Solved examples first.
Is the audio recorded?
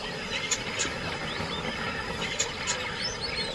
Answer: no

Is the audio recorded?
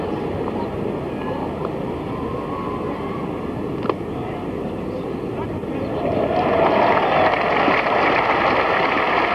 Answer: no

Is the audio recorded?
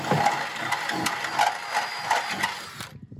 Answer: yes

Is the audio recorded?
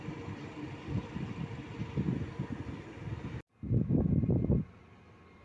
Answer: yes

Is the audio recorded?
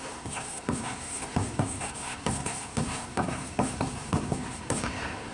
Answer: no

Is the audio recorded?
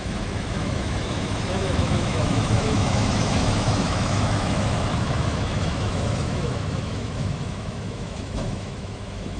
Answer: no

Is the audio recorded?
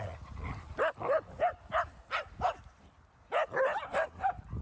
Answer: yes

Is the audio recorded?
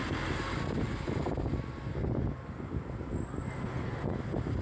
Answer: yes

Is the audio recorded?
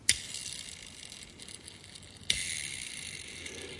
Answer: yes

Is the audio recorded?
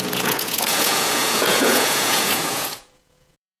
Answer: no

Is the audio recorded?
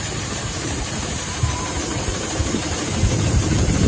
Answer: no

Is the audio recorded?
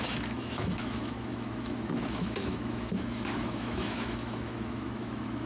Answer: no